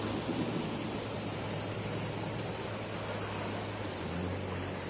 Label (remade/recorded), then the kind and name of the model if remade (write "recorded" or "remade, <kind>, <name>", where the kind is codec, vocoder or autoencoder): recorded